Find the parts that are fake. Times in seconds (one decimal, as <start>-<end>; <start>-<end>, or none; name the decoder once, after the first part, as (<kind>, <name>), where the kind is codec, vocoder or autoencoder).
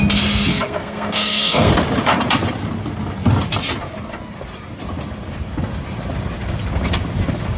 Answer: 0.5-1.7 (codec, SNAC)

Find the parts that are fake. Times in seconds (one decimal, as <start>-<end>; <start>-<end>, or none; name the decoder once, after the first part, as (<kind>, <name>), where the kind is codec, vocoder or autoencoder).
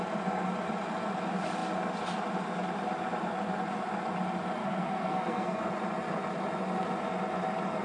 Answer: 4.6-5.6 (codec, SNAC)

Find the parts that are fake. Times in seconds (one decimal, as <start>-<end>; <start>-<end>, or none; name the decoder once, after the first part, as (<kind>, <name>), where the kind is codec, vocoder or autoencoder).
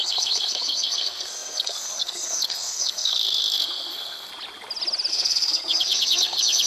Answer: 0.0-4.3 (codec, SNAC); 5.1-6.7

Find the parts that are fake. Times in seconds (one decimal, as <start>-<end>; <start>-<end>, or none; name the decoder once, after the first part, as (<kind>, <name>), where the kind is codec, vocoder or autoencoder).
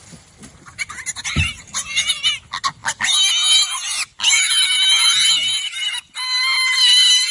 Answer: none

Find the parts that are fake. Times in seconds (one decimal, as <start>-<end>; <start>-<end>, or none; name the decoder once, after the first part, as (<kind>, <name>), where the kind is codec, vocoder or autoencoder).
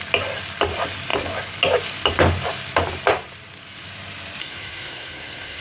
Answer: 4.4-5.6 (codec, SNAC)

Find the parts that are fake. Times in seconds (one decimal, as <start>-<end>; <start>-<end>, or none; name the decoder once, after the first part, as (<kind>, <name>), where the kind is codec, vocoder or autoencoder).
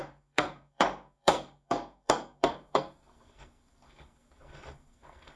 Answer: 0.0-5.4 (codec, SNAC)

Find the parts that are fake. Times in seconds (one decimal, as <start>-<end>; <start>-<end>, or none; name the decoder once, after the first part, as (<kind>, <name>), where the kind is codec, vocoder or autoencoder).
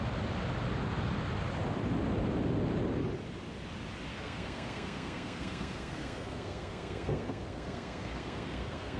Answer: 4.1-9.0 (codec, SNAC)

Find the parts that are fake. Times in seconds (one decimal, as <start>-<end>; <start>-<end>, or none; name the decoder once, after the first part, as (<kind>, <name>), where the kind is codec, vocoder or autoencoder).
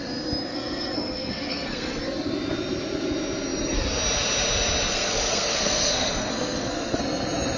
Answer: 0.5-2.0 (codec, SNAC); 4.9-7.0